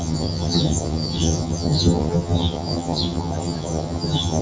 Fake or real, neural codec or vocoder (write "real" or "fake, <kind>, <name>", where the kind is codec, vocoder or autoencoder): fake, vocoder, HiFi-GAN